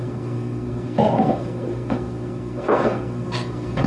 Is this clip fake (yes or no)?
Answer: yes